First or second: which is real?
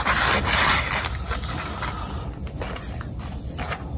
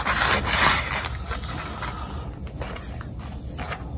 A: second